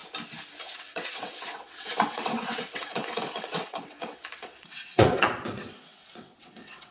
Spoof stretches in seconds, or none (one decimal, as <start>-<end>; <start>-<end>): 0.6-6.9